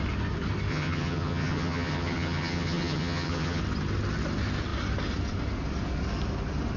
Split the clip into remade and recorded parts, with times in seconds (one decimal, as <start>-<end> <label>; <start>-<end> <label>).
0.0-0.7 recorded; 0.7-3.6 remade; 3.6-6.8 recorded